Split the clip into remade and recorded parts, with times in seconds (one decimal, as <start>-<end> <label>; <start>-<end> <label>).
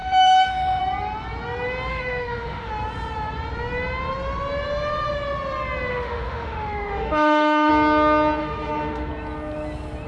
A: 0.0-0.8 remade; 0.8-1.9 recorded; 1.9-2.7 remade; 2.7-5.9 recorded; 5.9-7.7 remade; 7.7-8.4 recorded; 8.4-9.1 remade; 9.1-10.1 recorded